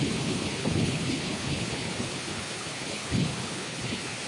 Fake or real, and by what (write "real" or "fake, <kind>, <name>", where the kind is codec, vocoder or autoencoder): fake, codec, HILCodec